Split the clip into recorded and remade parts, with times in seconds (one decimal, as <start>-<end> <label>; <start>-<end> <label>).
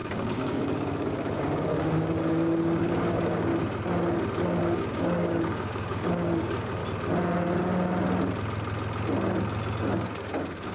0.0-3.5 remade; 3.5-4.6 recorded; 4.6-6.8 remade; 6.8-9.8 recorded; 9.8-10.7 remade